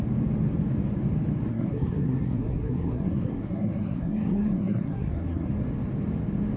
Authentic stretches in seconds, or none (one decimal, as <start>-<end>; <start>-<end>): 0.0-1.5; 5.5-6.6